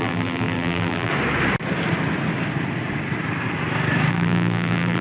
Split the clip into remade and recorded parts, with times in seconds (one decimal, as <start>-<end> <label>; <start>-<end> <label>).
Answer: 0.0-1.1 remade; 1.1-4.1 recorded; 4.1-5.0 remade